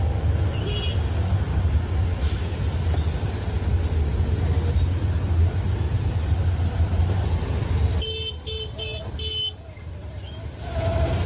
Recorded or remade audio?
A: recorded